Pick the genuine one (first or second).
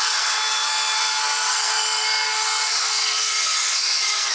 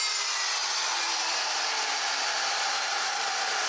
second